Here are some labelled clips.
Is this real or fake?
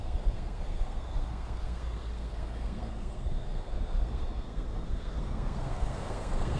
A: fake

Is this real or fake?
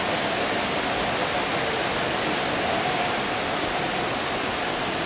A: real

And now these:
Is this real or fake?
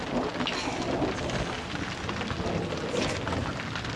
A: real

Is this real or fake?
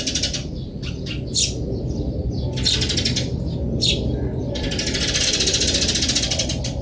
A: real